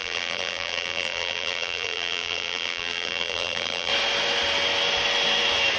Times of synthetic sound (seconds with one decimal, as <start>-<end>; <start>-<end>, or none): 0.0-3.9